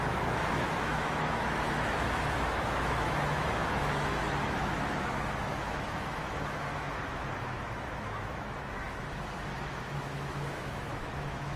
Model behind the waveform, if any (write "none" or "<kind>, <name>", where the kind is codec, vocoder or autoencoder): autoencoder, DAC-VAE